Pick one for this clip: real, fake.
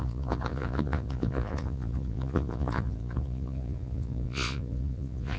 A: fake